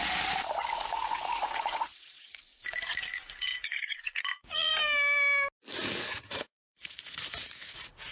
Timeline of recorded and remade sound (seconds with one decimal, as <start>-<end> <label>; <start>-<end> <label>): 0.0-0.7 recorded; 0.7-4.7 remade; 4.7-5.7 recorded; 5.7-8.1 remade